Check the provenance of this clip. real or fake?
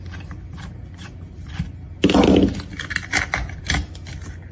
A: real